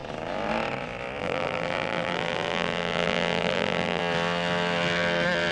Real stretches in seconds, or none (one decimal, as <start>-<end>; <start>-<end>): 0.0-1.2; 4.0-5.5